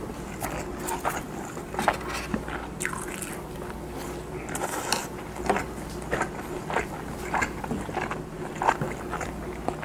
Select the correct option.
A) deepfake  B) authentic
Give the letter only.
B